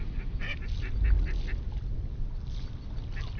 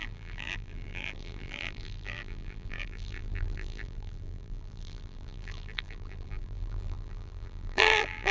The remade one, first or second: second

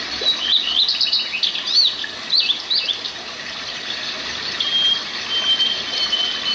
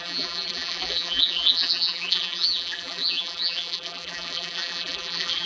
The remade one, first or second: second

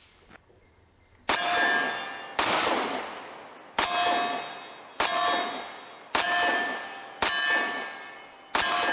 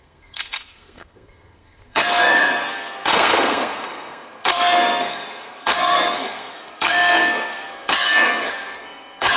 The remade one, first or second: second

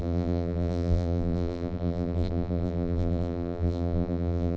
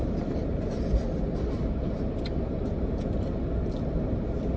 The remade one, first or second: first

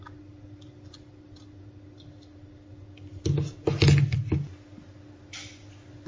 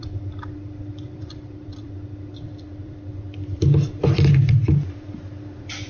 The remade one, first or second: second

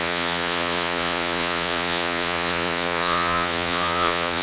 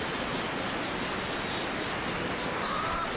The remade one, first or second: first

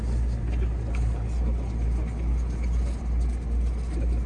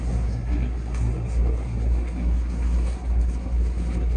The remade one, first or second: second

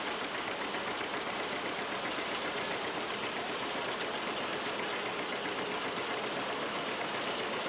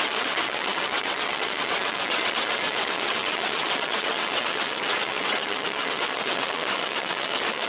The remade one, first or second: second